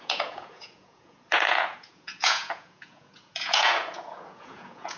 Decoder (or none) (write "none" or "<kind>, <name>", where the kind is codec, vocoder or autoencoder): vocoder, Vocos